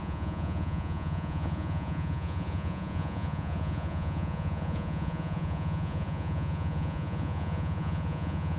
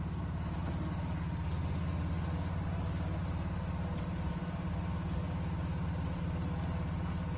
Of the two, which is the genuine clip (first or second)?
second